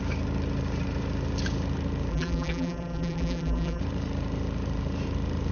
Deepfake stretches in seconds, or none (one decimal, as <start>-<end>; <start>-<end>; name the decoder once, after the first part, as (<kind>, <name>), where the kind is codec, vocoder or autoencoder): 2.1-3.8 (vocoder, BigVGAN v2)